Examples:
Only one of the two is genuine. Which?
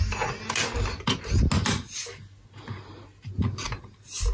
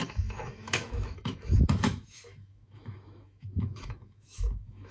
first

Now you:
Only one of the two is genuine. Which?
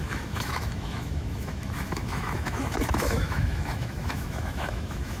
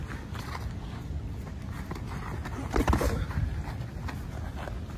second